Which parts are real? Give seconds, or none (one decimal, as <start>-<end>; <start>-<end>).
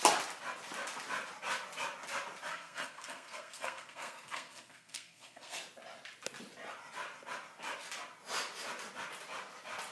0.0-2.5; 5.6-9.9